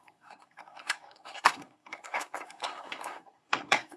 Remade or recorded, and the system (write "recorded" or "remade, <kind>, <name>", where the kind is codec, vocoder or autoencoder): remade, codec, SNAC